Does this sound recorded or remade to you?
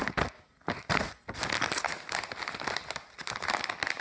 recorded